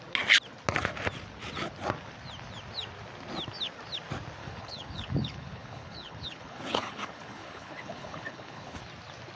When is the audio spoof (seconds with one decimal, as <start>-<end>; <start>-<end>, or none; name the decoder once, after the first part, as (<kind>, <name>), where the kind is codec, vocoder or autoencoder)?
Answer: 4.4-8.8 (codec, HILCodec)